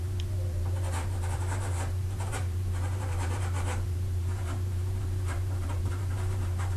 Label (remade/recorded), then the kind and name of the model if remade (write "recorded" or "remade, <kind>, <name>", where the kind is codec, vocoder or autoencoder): remade, vocoder, BigVGAN v2